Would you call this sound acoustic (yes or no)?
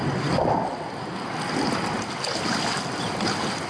yes